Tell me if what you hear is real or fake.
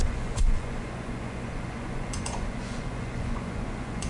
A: fake